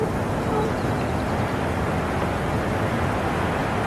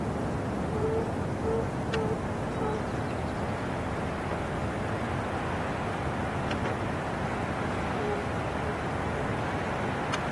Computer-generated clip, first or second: first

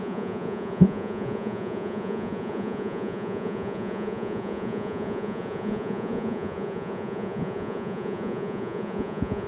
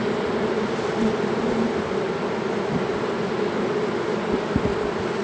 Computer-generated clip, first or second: first